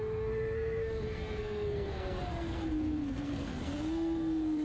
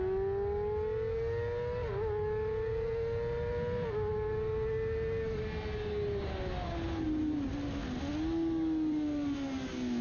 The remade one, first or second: first